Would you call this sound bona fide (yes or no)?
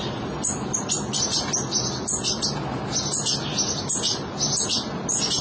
yes